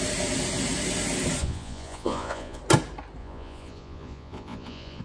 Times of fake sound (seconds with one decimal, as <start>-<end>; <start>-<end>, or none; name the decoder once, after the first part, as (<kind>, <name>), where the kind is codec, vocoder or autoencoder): 1.4-2.6 (vocoder, Vocos); 3.2-5.0